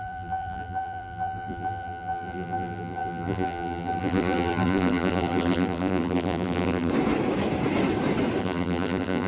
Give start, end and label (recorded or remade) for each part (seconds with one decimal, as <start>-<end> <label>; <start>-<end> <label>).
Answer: 0.0-6.9 remade; 6.9-8.4 recorded; 8.4-9.3 remade